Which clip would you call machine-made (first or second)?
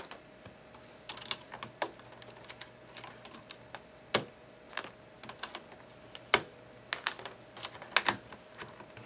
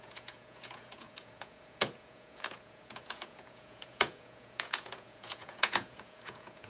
second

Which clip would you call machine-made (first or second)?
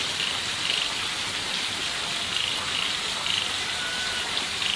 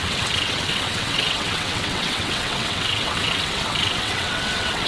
second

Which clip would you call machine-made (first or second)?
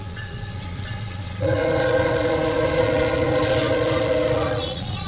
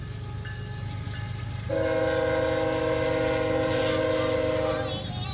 first